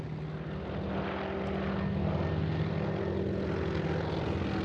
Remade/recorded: recorded